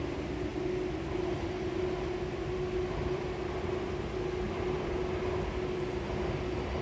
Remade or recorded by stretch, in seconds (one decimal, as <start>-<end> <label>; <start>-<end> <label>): 0.0-6.8 recorded